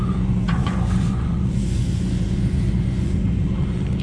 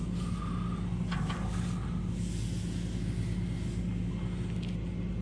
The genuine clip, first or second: second